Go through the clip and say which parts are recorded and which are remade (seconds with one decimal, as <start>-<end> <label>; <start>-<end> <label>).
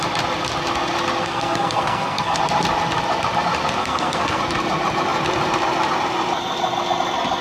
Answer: 0.0-1.2 recorded; 1.2-2.4 remade; 2.4-3.8 recorded; 3.8-4.4 remade; 4.4-7.4 recorded